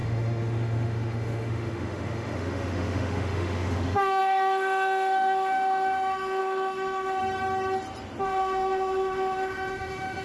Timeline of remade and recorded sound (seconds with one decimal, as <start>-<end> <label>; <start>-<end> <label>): 0.0-7.2 remade; 7.2-8.2 recorded; 8.2-10.2 remade